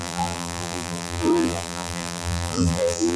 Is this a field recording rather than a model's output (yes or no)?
no